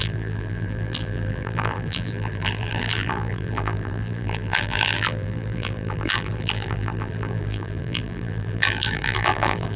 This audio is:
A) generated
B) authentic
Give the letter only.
A